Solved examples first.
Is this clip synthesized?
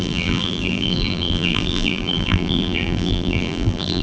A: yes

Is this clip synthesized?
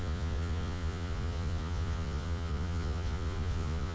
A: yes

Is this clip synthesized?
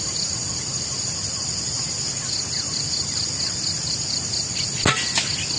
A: no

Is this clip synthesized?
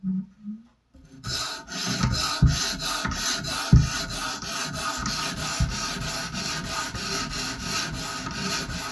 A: no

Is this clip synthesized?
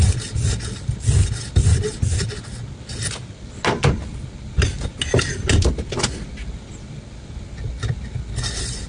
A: no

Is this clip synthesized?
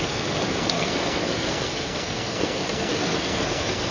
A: yes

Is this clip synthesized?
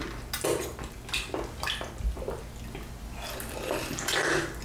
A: no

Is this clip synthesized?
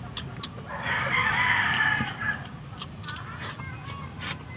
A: no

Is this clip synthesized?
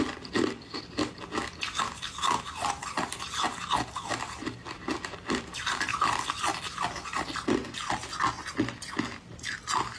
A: no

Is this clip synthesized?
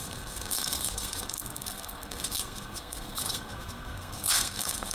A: yes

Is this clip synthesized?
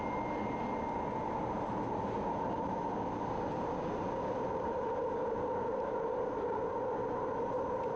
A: no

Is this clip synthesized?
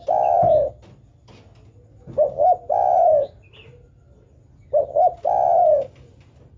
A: no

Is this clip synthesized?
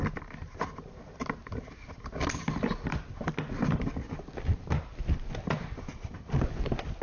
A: no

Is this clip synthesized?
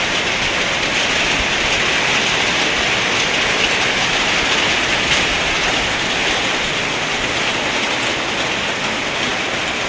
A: no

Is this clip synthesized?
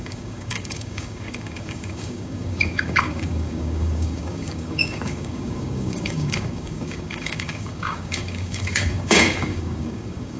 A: yes